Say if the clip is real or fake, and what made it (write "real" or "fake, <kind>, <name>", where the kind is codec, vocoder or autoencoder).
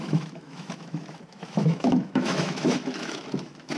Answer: fake, autoencoder, DAC-VAE